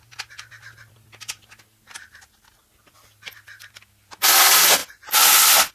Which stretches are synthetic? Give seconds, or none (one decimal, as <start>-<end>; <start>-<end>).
none